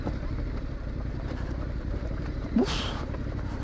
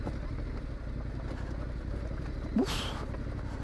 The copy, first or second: first